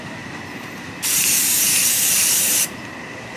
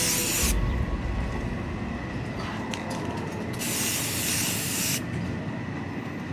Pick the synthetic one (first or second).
first